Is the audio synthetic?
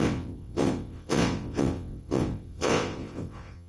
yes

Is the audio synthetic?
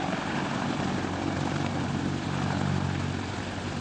no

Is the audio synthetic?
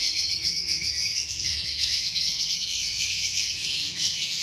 yes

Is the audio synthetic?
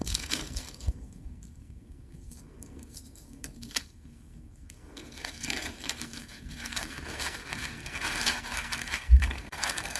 yes